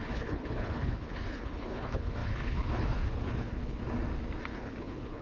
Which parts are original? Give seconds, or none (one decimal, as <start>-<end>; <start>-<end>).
3.8-4.5